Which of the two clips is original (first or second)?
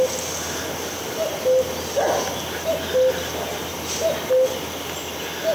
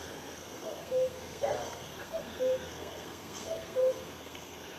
first